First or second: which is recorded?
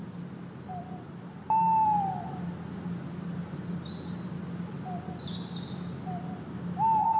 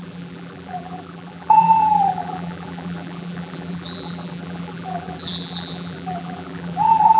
first